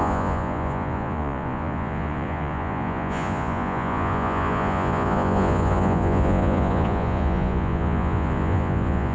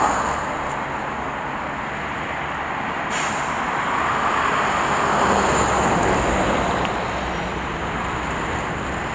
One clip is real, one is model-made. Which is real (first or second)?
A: second